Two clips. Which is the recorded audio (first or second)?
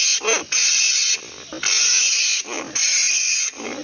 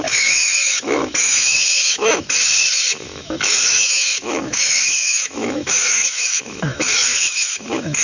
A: first